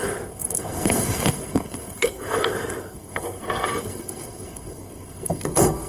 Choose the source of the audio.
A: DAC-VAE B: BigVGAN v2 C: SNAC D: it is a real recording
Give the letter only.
C